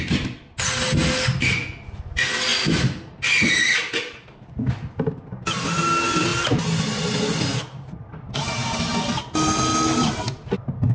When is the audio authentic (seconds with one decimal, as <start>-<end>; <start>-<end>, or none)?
0.0-10.9